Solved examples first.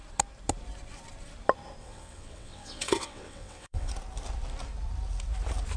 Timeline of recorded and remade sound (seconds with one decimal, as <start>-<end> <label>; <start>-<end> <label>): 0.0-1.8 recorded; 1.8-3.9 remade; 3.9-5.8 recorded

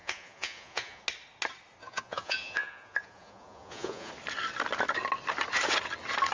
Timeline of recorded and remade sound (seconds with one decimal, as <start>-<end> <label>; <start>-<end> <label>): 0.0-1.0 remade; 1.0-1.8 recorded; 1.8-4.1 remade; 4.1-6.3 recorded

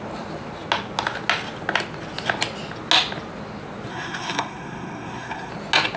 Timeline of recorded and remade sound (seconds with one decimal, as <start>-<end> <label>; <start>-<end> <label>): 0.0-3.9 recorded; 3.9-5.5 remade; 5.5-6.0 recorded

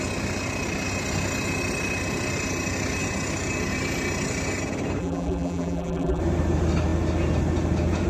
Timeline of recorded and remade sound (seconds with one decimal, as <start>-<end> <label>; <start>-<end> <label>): 0.0-5.0 recorded; 5.0-6.2 remade; 6.2-8.1 recorded

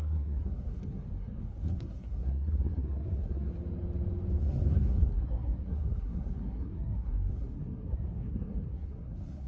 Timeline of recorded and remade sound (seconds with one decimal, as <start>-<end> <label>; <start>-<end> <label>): 0.0-3.5 remade; 3.5-4.4 recorded; 4.4-9.5 remade